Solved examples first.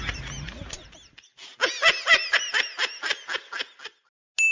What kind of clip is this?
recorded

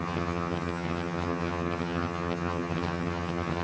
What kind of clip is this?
remade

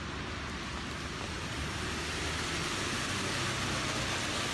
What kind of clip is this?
recorded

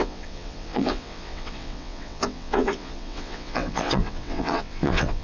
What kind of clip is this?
remade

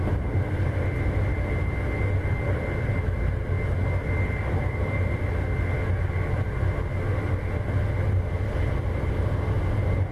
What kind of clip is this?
recorded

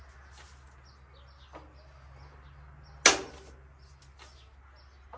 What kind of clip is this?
recorded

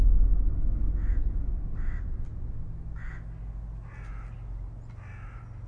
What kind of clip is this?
recorded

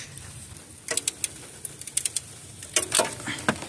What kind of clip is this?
recorded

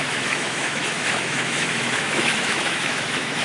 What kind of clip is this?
remade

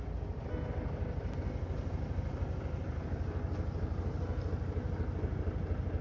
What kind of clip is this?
recorded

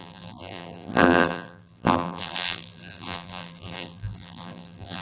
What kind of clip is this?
remade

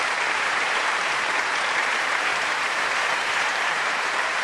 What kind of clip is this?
remade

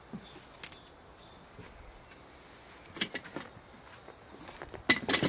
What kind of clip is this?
recorded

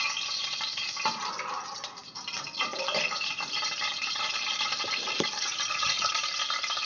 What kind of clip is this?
remade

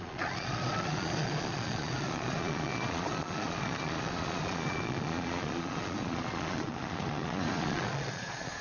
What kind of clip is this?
remade